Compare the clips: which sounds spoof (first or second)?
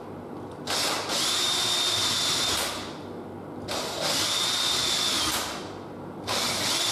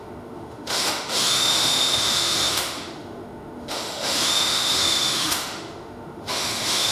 second